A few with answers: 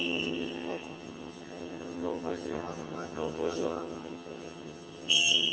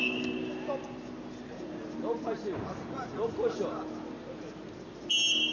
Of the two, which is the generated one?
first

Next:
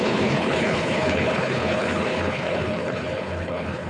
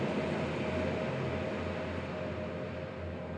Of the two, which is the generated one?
first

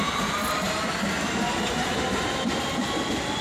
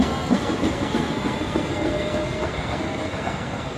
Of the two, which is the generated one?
second